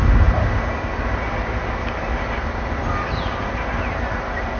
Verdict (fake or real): real